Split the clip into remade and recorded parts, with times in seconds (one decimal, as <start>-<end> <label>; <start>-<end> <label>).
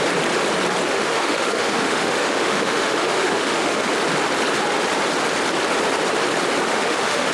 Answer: 0.0-0.9 recorded; 0.9-3.9 remade; 3.9-6.7 recorded; 6.7-7.3 remade